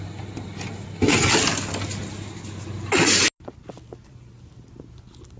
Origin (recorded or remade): recorded